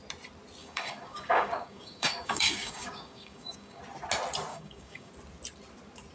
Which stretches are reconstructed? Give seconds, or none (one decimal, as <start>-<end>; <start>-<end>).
0.6-3.8; 4.5-5.1